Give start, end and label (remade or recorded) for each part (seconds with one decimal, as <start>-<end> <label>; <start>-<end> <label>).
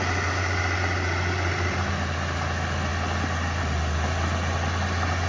0.0-5.3 recorded